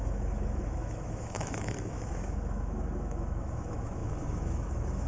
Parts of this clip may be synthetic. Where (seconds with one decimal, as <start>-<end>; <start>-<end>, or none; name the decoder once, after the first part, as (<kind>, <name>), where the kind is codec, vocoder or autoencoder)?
0.0-5.1 (autoencoder, DAC-VAE)